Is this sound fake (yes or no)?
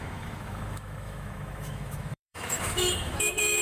yes